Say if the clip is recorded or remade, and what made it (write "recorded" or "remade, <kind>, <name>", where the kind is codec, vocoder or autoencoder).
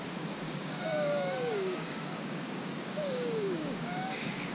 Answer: remade, codec, DAC